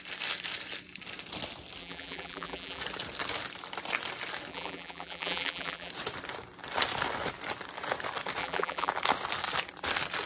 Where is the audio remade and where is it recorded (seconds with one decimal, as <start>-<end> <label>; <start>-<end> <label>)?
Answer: 0.0-1.8 recorded; 1.8-2.8 remade; 2.8-4.5 recorded; 4.5-5.9 remade; 5.9-8.4 recorded; 8.4-8.9 remade; 8.9-10.3 recorded